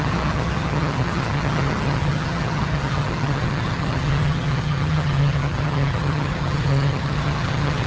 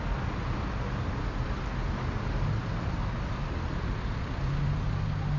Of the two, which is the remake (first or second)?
first